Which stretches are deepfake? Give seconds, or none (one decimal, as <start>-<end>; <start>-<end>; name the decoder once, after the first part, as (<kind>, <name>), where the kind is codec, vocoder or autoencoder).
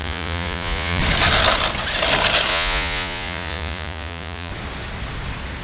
0.0-1.0 (vocoder, Vocos); 2.5-4.5